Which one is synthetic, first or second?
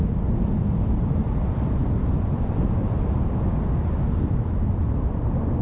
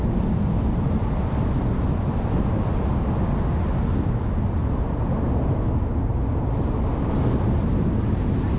first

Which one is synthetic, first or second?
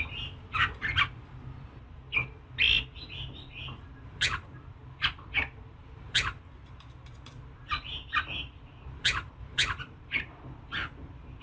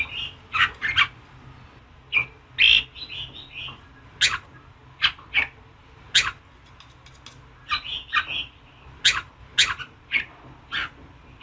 first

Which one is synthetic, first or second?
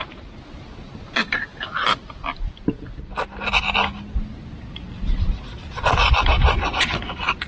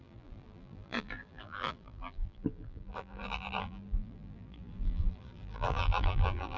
second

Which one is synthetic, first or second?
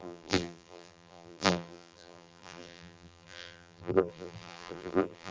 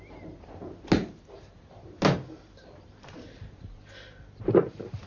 first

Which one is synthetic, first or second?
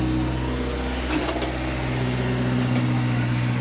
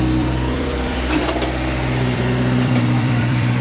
second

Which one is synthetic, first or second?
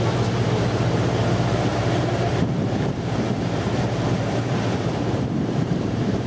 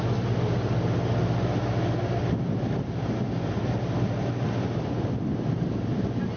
first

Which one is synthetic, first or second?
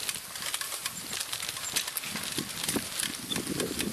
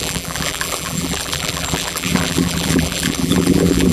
second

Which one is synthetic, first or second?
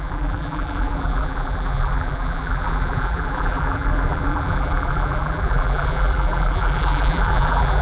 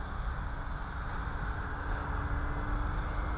first